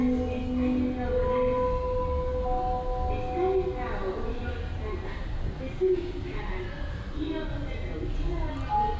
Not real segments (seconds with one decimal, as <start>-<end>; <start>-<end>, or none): 4.0-6.4